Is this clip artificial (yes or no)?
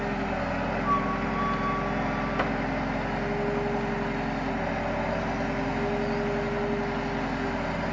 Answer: no